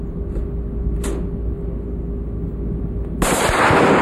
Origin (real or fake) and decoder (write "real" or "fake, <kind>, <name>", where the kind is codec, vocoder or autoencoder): real